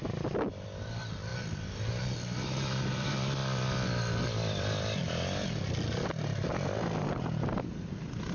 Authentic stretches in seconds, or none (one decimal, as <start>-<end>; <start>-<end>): 1.3-1.9; 3.4-4.0; 5.0-7.9